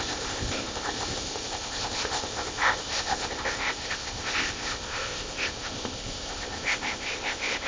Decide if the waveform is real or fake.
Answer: fake